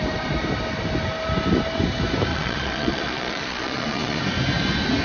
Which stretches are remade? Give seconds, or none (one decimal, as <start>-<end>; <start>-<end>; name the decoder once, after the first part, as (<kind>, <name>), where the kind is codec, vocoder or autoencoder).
2.3-4.2 (vocoder, Vocos)